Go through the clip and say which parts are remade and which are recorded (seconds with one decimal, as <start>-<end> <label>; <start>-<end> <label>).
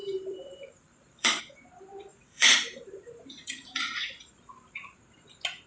0.0-1.4 remade; 1.4-2.1 recorded; 2.1-5.0 remade; 5.0-5.7 recorded